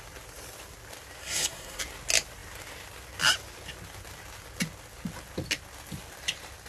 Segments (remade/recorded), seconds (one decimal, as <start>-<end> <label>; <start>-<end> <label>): 0.0-1.2 recorded; 1.2-1.8 remade; 1.8-6.7 recorded